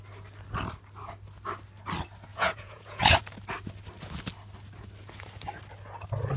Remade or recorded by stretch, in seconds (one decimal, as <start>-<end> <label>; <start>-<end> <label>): 0.0-2.3 recorded; 2.3-3.2 remade; 3.2-6.4 recorded